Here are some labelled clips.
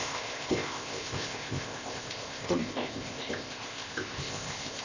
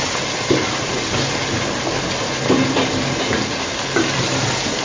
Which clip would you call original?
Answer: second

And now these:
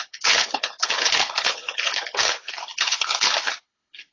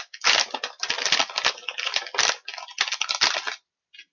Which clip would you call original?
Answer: second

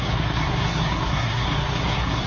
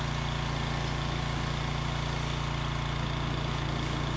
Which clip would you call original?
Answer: second